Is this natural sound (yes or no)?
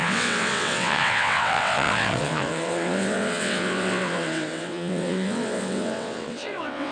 no